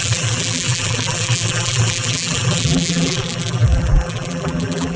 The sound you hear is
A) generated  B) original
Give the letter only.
A